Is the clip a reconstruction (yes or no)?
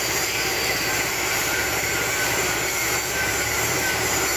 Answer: yes